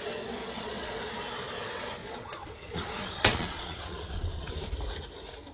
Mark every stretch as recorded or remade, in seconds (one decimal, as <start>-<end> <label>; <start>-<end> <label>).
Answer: 0.0-0.4 recorded; 0.4-1.0 remade; 1.0-2.0 recorded; 2.0-4.5 remade; 4.5-5.5 recorded